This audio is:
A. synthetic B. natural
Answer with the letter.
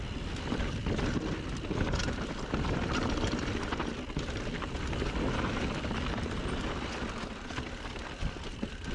A